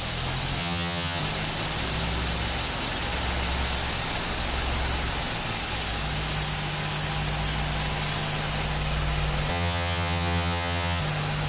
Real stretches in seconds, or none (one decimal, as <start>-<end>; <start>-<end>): 0.0-0.6; 1.2-9.5; 11.0-11.5